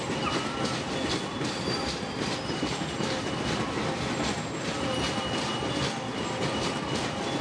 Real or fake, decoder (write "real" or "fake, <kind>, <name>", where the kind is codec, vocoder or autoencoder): real